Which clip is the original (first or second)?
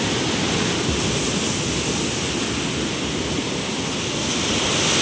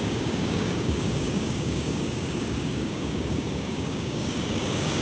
first